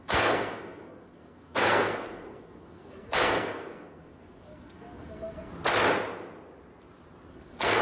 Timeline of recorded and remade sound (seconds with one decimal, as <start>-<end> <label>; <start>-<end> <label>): 0.0-5.5 remade; 5.5-7.3 recorded; 7.3-7.8 remade